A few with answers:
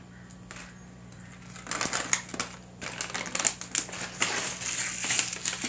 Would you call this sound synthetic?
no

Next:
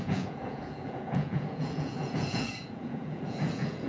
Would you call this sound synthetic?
yes